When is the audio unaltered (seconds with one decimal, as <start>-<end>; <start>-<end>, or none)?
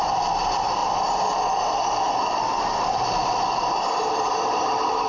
0.0-5.1